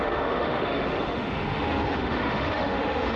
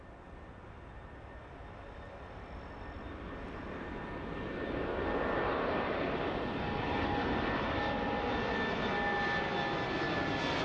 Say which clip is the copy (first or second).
first